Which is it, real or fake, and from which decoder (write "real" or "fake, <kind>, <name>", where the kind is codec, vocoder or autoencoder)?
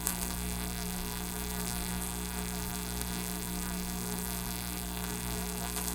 fake, codec, SNAC